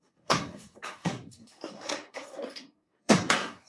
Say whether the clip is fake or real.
fake